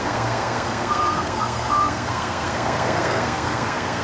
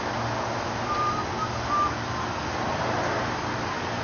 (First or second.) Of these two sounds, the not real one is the first